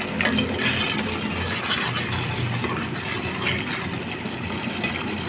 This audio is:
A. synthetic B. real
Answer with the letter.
B